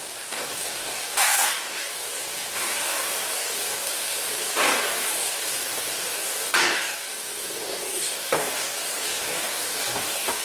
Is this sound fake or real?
fake